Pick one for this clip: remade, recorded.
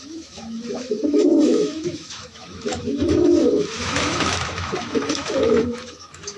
remade